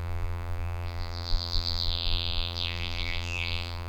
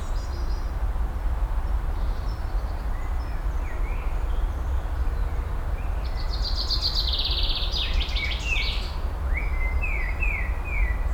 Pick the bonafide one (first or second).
second